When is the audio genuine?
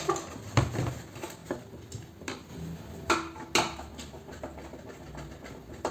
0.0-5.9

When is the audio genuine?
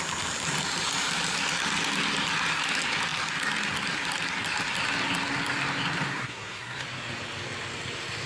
0.0-6.1; 6.8-8.3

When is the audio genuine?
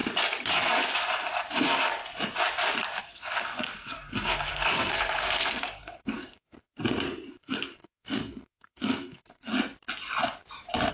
0.0-3.0; 6.7-7.3; 9.5-10.9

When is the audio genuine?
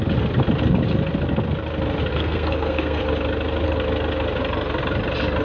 0.0-2.1; 3.0-5.4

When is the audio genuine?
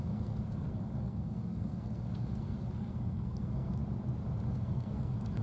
3.8-4.5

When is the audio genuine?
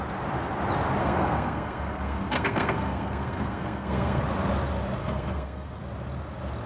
0.0-1.0; 4.2-5.0; 5.8-6.7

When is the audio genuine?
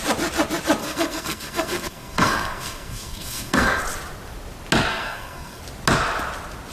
0.0-0.8; 3.8-4.9; 5.6-6.7